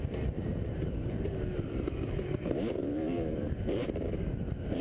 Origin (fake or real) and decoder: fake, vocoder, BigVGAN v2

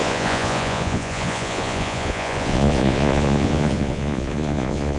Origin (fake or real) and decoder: fake, vocoder, Vocos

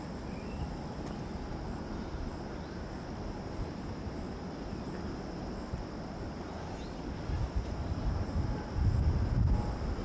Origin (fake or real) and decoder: real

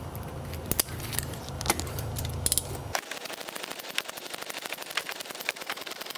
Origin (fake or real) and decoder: real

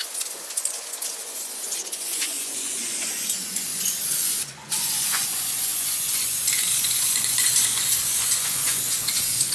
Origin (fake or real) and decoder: fake, vocoder, Vocos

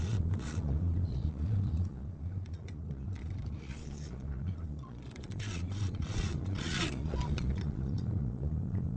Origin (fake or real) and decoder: fake, vocoder, Vocos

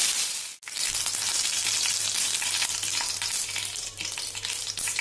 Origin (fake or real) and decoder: real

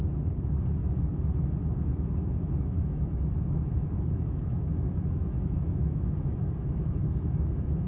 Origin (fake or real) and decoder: fake, autoencoder, DAC-VAE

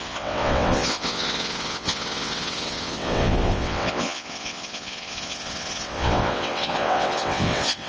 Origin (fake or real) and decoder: fake, vocoder, WaveNeXt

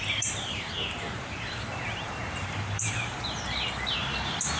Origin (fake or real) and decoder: fake, vocoder, BigVGAN v2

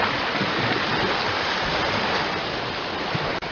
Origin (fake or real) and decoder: real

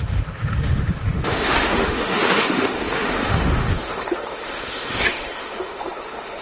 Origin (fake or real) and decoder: fake, autoencoder, DAC-VAE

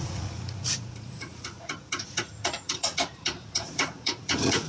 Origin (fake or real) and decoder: fake, vocoder, Vocos